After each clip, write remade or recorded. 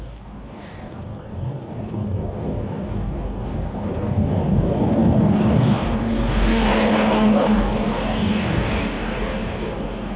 remade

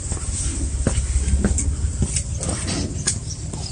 recorded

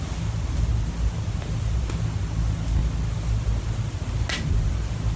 recorded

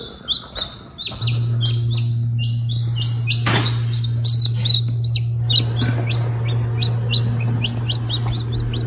recorded